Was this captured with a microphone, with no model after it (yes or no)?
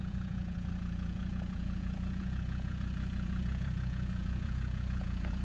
no